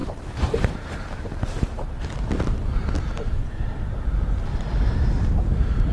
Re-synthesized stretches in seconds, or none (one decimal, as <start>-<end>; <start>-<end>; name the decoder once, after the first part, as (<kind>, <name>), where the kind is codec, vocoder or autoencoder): 0.0-2.0 (vocoder, BigVGAN v2)